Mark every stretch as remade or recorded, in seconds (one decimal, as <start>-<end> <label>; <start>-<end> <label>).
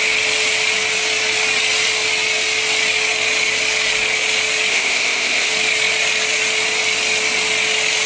0.0-4.7 recorded; 4.7-5.5 remade; 5.5-8.1 recorded